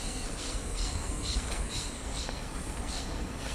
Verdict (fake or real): fake